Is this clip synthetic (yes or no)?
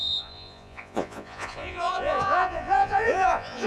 yes